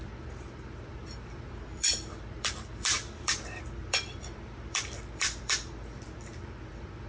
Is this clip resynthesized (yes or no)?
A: yes